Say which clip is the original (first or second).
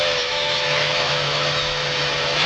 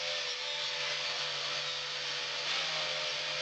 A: second